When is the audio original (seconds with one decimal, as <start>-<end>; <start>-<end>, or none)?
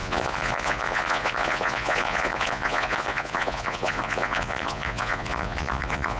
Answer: none